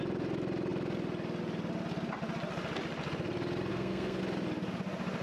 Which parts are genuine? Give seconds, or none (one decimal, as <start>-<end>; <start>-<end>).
0.0-3.7; 4.2-5.2